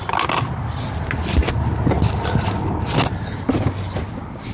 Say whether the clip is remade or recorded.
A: recorded